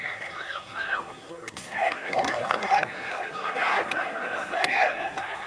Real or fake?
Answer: fake